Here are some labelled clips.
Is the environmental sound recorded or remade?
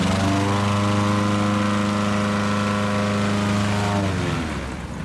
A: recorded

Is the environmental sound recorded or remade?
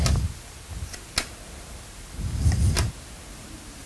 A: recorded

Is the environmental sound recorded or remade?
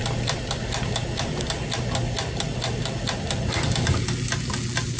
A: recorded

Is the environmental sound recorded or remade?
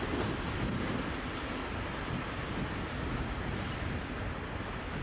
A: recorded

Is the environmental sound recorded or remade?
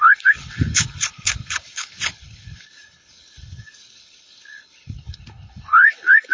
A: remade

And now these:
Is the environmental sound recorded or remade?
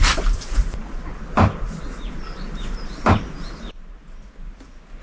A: recorded